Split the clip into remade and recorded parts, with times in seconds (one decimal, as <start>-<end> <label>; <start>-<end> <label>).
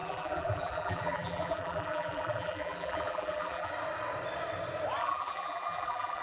0.0-3.7 remade; 3.7-5.0 recorded; 5.0-6.2 remade